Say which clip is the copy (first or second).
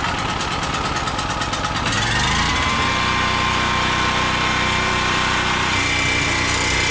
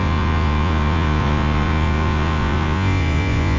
second